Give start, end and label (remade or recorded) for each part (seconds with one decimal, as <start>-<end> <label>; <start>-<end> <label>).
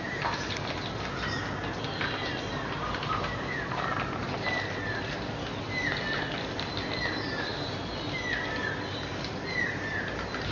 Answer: 0.0-10.5 recorded